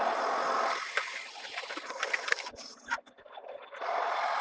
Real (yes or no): yes